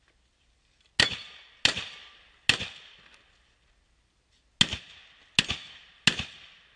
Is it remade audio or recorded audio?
recorded